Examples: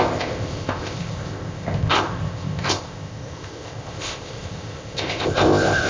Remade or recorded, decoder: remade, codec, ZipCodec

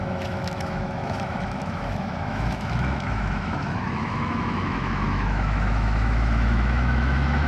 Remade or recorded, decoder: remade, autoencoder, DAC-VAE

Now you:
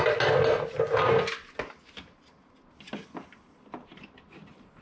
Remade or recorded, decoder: recorded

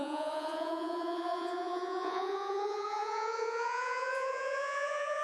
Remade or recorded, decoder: remade, vocoder, Vocos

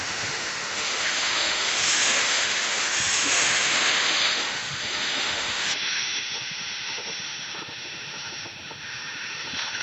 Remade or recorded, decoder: remade, autoencoder, DAC-VAE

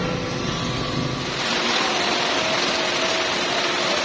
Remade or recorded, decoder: recorded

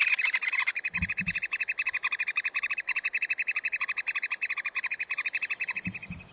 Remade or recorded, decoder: recorded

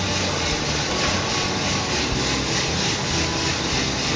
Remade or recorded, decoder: recorded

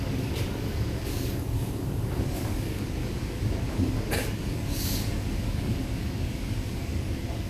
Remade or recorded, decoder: remade, codec, DAC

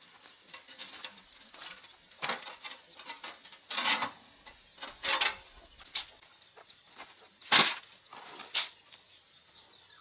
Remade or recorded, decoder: recorded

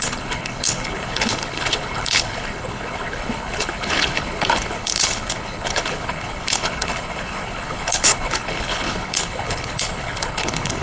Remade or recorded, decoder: remade, codec, HILCodec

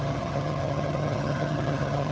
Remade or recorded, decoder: remade, vocoder, HiFi-GAN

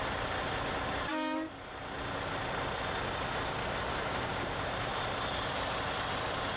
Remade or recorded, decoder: recorded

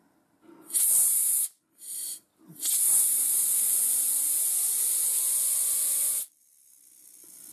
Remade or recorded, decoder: recorded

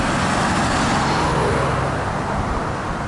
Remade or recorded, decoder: recorded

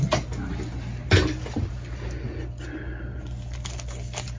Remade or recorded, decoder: recorded